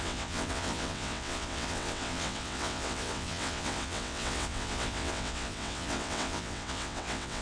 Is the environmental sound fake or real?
fake